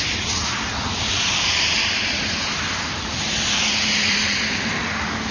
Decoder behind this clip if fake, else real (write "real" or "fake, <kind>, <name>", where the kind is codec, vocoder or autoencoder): fake, vocoder, BigVGAN v2